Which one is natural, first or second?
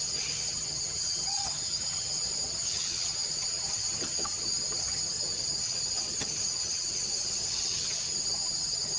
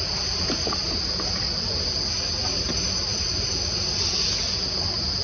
second